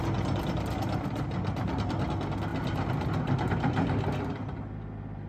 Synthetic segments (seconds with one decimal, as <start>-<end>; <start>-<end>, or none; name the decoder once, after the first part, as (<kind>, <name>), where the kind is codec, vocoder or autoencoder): none